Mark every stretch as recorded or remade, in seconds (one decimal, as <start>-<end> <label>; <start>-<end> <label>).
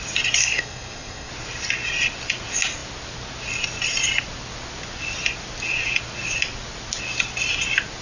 0.0-0.4 recorded; 0.4-1.3 remade; 1.3-8.0 recorded